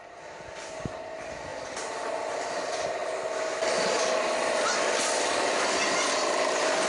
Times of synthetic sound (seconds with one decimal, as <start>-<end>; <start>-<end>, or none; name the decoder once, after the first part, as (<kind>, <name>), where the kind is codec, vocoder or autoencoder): none